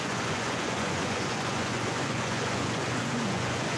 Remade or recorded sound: remade